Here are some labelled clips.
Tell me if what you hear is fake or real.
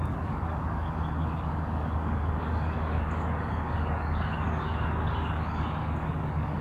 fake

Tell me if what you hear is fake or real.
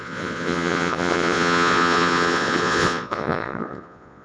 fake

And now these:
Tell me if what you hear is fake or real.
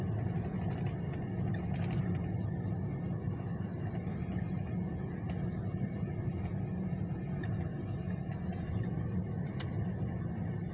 real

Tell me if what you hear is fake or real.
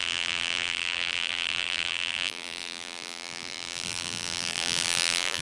fake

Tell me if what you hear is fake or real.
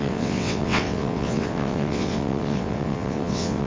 fake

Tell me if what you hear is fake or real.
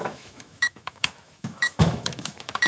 fake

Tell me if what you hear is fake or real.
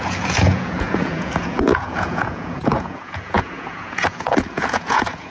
fake